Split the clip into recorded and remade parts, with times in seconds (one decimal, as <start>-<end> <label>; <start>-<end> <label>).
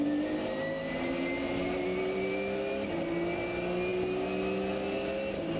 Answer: 0.0-5.6 recorded